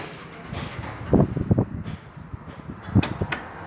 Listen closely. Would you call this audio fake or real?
real